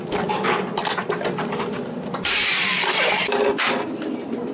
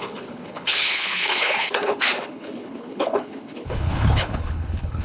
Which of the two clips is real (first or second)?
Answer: first